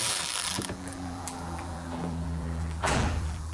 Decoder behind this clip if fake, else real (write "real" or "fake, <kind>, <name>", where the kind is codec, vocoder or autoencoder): fake, vocoder, BigVGAN v2